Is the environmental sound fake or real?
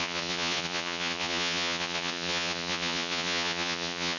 fake